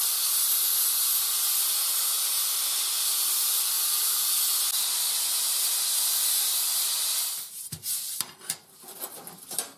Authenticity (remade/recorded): recorded